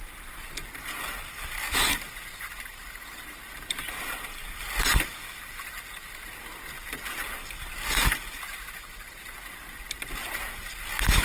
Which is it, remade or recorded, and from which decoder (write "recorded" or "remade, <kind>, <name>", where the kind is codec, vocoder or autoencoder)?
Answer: recorded